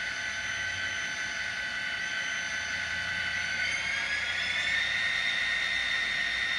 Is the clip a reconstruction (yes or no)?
no